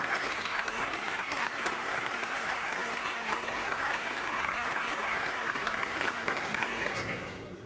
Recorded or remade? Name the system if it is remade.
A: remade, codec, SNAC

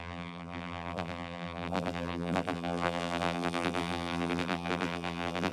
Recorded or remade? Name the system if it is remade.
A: remade, vocoder, BigVGAN v2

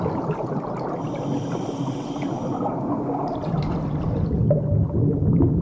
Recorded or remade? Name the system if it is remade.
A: recorded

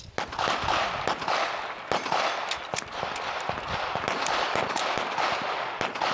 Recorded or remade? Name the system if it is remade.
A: recorded